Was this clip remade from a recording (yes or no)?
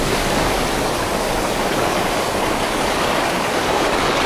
yes